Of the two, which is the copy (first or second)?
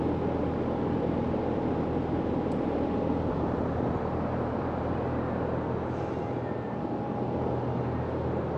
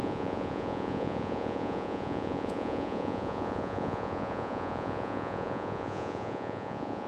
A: second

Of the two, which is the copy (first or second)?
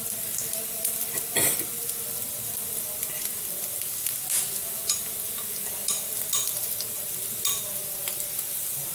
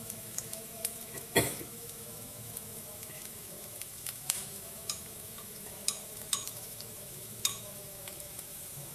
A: second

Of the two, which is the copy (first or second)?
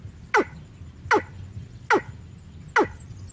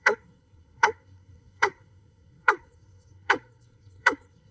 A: second